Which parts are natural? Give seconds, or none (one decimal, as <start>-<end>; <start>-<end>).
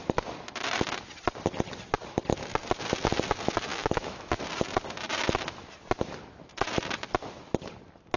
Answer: 0.0-3.7; 4.4-8.2